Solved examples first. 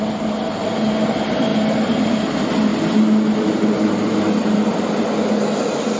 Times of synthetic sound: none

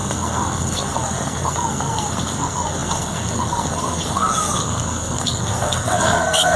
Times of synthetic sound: 0.0-6.6

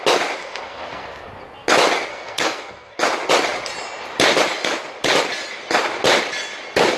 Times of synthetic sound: 0.4-1.3; 2.1-3.0

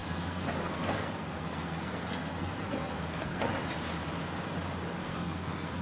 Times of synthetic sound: 0.0-3.5; 5.0-5.8

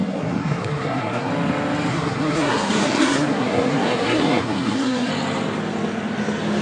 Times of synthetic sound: 0.0-1.3; 1.9-5.1

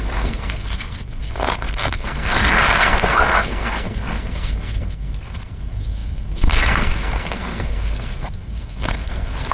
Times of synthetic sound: 0.0-9.5

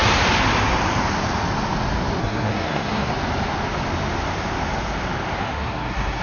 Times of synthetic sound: 2.2-3.1; 5.4-6.2